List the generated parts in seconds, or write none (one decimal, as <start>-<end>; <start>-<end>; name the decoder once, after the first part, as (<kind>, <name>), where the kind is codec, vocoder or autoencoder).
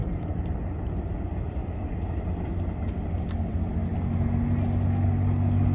0.0-0.9 (vocoder, BigVGAN v2)